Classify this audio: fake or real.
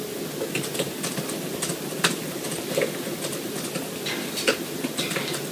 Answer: real